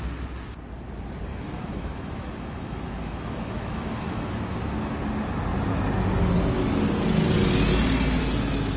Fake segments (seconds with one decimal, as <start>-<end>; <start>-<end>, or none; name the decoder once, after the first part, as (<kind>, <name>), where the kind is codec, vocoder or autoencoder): 1.3-4.4 (autoencoder, DAC-VAE)